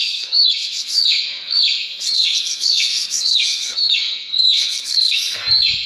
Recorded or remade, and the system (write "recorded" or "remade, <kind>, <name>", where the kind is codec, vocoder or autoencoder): remade, codec, SNAC